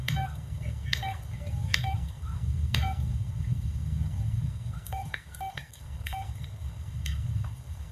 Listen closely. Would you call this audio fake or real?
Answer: fake